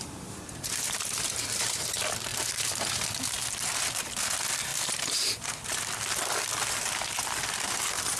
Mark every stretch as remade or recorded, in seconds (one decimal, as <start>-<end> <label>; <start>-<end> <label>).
0.0-1.7 remade; 1.7-4.7 recorded; 4.7-5.9 remade; 5.9-8.2 recorded